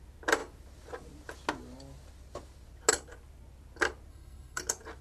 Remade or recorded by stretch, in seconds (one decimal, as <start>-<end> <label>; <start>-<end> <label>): 0.0-4.1 recorded; 4.1-4.6 remade; 4.6-5.0 recorded